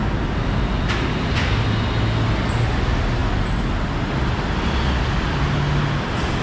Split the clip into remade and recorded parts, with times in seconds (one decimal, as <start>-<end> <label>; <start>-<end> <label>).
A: 0.0-6.4 recorded